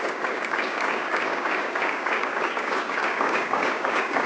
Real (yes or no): no